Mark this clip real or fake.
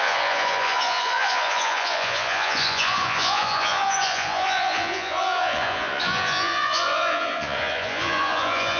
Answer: fake